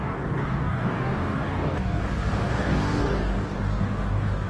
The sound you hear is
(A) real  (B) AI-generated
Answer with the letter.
B